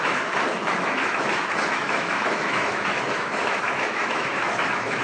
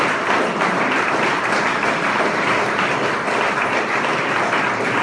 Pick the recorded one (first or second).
second